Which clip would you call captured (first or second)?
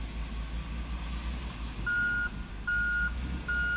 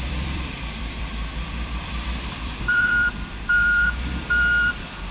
first